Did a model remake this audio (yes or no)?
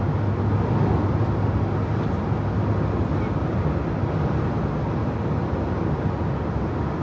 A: no